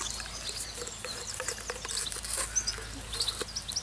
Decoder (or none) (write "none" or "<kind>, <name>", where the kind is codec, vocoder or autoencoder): none